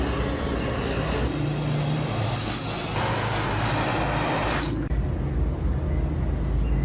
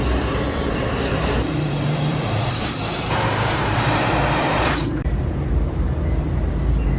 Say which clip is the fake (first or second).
second